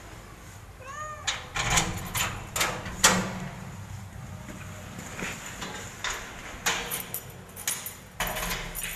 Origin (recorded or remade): recorded